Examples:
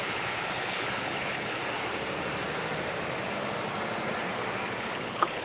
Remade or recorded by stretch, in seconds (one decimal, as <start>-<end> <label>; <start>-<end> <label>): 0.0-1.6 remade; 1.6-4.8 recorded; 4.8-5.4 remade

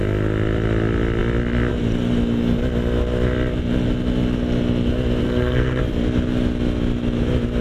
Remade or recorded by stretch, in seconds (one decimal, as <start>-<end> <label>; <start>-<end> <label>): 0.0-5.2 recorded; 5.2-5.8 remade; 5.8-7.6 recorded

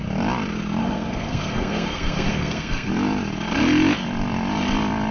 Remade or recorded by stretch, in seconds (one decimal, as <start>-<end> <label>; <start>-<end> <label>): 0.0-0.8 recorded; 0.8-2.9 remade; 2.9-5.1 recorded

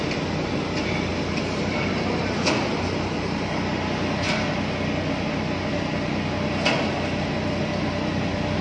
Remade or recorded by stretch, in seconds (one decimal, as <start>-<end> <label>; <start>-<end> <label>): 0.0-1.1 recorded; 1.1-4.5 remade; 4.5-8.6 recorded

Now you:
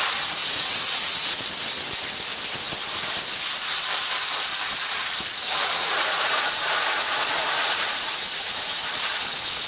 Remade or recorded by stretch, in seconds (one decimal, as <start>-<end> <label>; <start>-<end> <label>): 0.0-0.4 recorded; 0.4-1.4 remade; 1.4-4.5 recorded; 4.5-9.7 remade